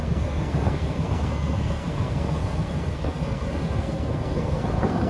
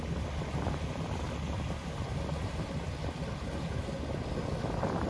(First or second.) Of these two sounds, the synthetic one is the first